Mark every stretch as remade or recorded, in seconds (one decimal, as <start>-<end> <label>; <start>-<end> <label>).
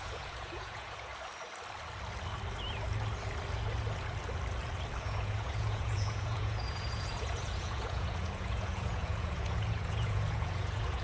0.0-1.1 remade; 1.1-5.0 recorded; 5.0-11.0 remade